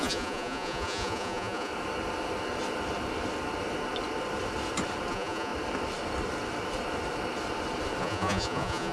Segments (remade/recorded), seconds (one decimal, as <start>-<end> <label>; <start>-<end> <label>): 0.0-1.7 remade; 1.7-5.1 recorded; 5.1-5.5 remade; 5.5-8.0 recorded; 8.0-8.9 remade